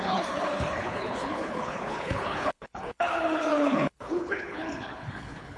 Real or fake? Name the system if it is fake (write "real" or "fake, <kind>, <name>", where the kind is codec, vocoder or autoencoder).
fake, codec, HILCodec